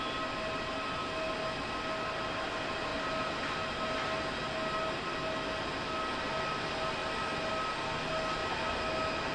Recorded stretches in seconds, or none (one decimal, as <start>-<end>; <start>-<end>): 0.0-9.3